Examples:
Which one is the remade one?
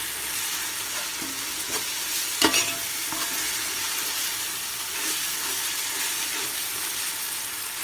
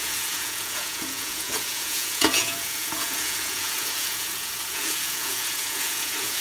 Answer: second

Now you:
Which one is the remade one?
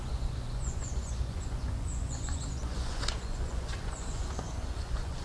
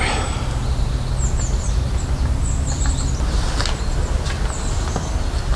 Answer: first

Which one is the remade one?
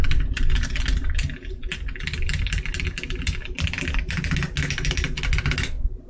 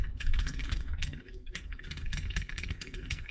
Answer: second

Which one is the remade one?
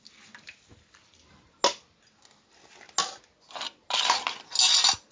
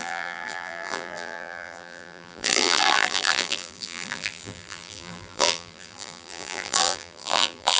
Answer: second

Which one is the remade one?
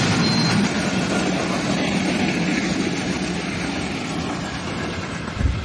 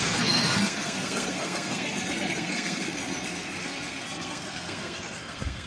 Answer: second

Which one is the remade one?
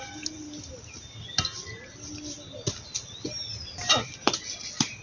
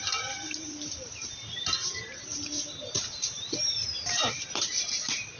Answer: second